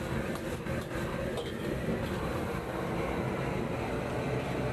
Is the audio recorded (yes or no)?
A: yes